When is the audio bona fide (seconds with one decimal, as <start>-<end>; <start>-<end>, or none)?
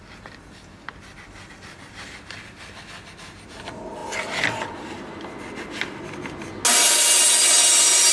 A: 0.0-8.1